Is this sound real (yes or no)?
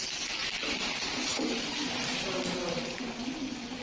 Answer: yes